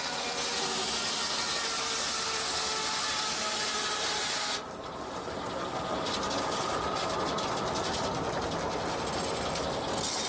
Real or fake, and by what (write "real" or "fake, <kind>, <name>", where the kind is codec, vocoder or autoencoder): real